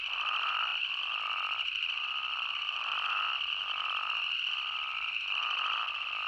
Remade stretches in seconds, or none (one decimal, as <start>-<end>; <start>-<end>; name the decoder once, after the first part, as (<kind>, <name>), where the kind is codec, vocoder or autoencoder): none

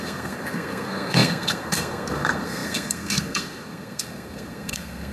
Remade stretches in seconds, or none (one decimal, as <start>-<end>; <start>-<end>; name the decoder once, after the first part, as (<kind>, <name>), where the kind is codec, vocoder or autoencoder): 0.0-5.1 (codec, SNAC)

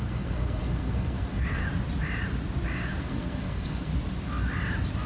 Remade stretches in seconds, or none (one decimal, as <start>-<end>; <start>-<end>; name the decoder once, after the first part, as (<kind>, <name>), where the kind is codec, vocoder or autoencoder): 0.0-1.6 (codec, SNAC); 3.0-3.9

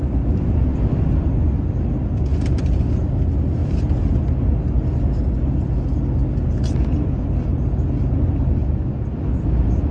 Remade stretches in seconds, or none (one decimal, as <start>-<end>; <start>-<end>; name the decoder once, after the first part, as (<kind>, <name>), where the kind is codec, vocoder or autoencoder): 0.7-1.3 (vocoder, BigVGAN v2); 2.3-2.9; 3.6-4.1; 8.6-9.9

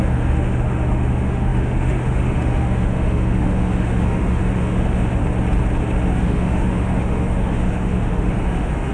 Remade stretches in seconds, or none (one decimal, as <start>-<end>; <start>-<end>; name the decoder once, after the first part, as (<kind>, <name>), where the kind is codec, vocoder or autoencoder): 0.0-5.2 (autoencoder, DAC-VAE); 6.1-8.9